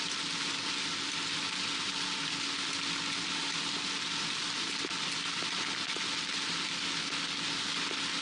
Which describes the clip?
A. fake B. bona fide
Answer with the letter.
B